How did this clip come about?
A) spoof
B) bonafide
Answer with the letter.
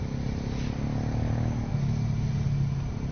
B